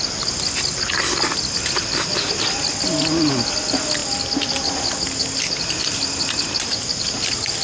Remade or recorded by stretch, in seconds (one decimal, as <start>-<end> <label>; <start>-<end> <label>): 0.0-7.6 recorded